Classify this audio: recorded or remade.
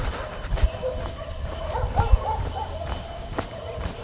recorded